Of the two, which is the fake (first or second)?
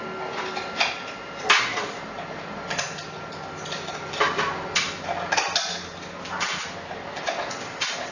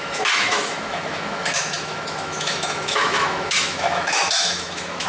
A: second